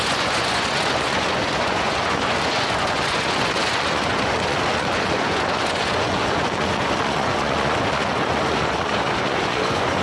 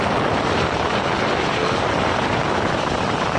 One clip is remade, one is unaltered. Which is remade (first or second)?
first